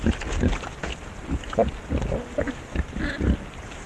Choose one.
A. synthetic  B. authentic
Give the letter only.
B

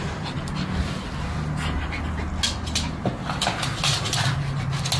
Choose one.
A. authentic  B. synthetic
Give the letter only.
A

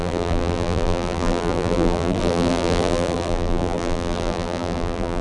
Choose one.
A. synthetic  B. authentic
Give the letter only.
A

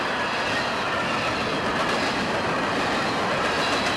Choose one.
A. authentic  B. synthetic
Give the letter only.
A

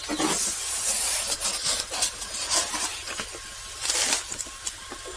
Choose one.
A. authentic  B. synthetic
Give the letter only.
A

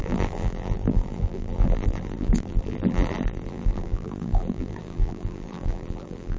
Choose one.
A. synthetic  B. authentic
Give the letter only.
A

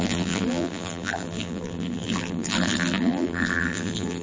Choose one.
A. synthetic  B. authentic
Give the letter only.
A